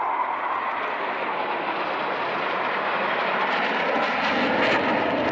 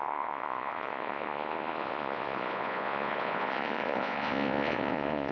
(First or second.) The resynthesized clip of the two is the second